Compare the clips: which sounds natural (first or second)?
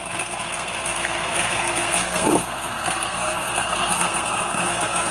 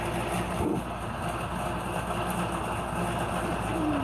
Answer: second